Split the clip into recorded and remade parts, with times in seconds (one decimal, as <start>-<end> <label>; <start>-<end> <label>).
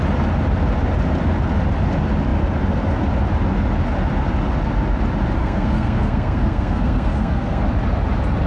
0.0-5.4 recorded; 5.4-7.6 remade; 7.6-8.5 recorded